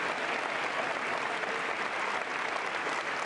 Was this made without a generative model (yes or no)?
yes